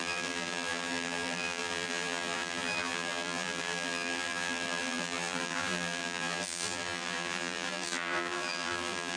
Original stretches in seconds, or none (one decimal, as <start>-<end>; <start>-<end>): none